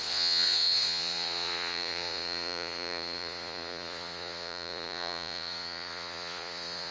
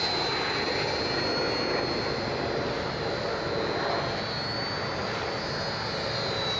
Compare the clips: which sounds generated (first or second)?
first